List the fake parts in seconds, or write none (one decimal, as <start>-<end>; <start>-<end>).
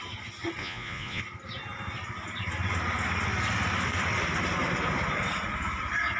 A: 0.6-1.2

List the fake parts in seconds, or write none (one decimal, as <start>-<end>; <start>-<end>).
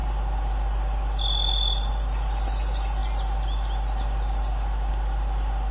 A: none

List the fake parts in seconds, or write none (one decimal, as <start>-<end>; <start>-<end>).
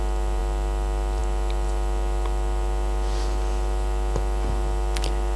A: none